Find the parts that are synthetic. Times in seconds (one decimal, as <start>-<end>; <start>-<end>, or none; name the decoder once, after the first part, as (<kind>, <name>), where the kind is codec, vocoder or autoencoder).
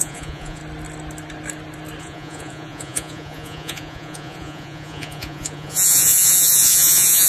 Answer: 0.0-0.6 (vocoder, Vocos); 2.0-7.3